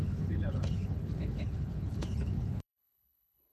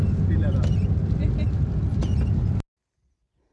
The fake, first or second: first